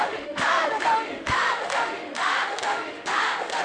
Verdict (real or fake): fake